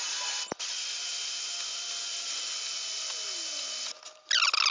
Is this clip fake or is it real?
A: real